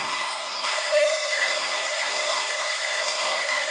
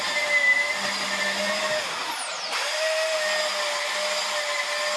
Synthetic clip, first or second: first